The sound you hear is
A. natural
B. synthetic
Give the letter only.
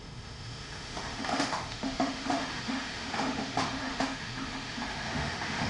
B